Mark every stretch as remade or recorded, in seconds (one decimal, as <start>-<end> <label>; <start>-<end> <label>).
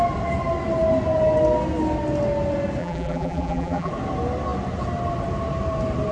0.0-2.8 recorded; 2.8-3.9 remade; 3.9-6.1 recorded